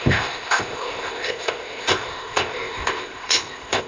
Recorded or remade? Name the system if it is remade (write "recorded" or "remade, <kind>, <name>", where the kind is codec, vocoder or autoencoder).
remade, codec, ZipCodec